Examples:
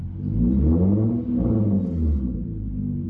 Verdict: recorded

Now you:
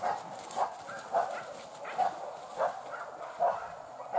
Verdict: recorded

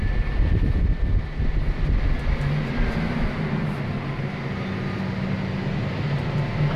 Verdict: recorded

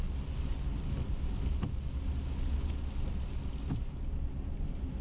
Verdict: recorded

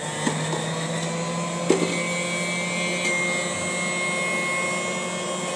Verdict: recorded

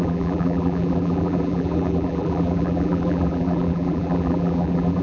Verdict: remade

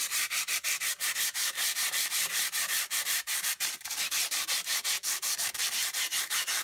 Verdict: remade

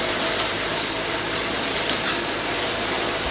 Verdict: remade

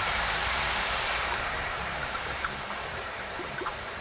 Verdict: remade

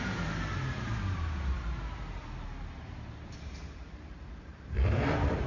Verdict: remade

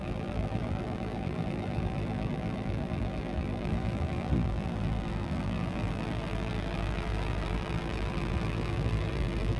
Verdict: remade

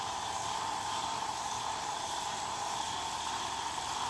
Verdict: remade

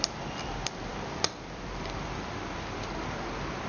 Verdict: remade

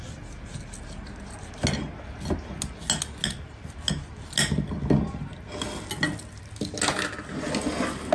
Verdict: recorded